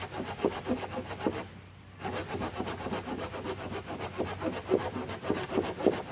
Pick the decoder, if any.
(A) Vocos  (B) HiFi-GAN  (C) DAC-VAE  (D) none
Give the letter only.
D